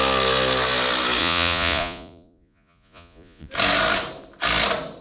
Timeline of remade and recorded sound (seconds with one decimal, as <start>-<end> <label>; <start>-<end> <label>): 0.0-1.2 recorded; 1.2-3.5 remade; 3.5-5.0 recorded